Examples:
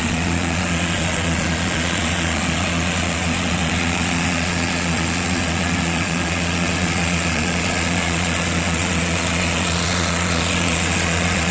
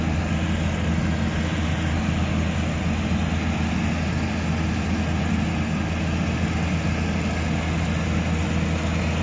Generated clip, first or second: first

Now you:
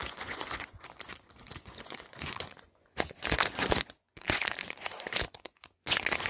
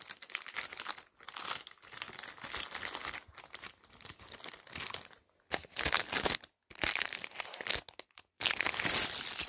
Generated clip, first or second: first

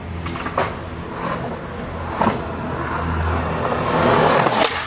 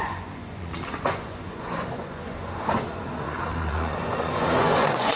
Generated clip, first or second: second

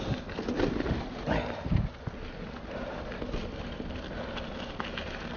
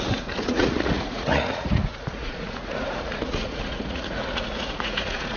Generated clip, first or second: second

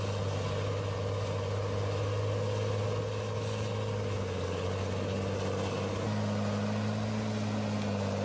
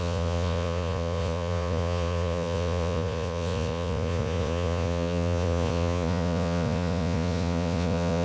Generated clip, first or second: second